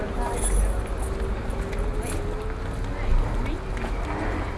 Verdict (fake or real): real